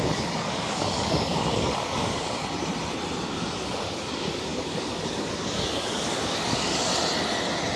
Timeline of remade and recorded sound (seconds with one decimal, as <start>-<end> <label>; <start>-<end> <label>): 0.0-2.4 remade; 2.4-3.2 recorded; 3.2-6.9 remade; 6.9-7.8 recorded